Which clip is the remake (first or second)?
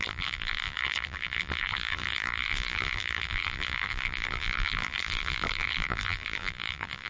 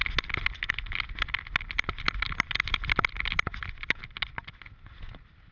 first